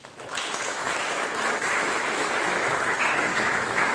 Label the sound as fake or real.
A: fake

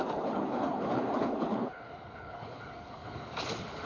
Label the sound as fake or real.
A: fake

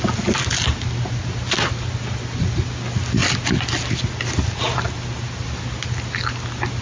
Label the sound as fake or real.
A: real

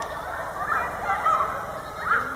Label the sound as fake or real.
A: real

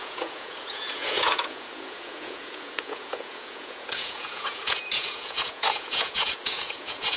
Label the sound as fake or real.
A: fake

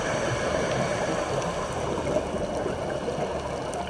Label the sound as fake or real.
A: real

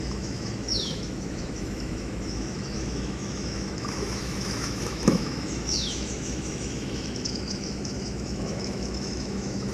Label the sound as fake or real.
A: fake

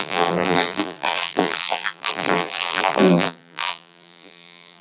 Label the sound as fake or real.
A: fake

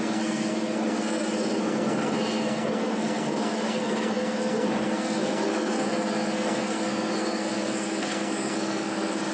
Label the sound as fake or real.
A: fake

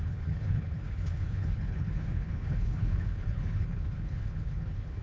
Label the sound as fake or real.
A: fake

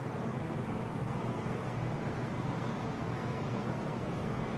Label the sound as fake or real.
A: fake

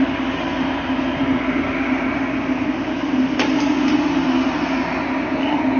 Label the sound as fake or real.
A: real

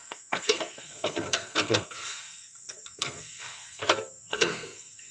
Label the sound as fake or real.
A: fake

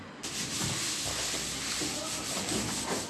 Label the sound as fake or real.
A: real